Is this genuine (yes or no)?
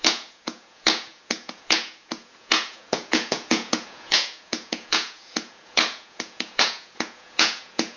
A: no